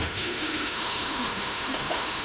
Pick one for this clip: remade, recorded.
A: remade